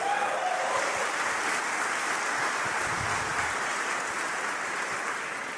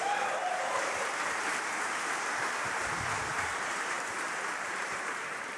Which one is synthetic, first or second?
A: second